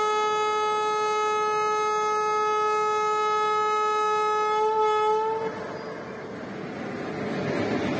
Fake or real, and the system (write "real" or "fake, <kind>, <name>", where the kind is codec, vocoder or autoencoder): real